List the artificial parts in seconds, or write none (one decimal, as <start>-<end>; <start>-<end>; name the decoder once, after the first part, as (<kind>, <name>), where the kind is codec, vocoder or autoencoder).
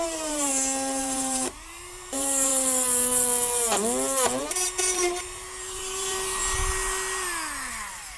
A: 0.0-0.5 (vocoder, BigVGAN v2); 1.0-2.5; 4.4-6.4; 7.7-8.2